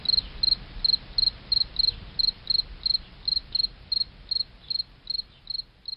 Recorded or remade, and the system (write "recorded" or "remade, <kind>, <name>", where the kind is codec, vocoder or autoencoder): recorded